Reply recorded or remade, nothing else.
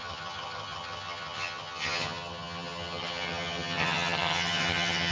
remade